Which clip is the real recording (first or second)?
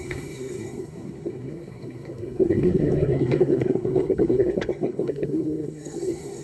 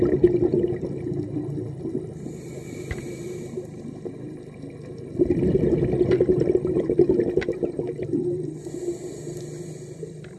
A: second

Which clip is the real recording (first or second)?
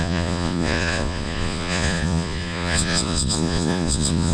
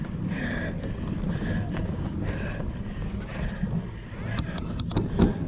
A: second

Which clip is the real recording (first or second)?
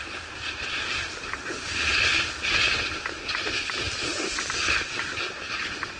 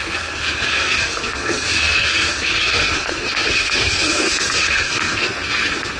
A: first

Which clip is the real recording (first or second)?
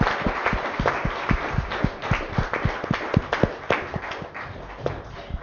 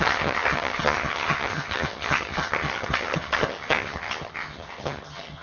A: first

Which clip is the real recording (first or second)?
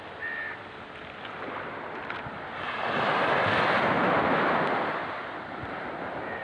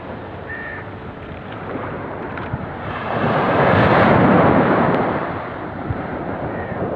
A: first